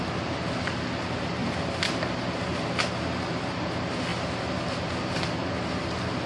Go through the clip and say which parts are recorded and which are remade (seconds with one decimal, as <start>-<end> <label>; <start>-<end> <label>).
0.0-6.3 recorded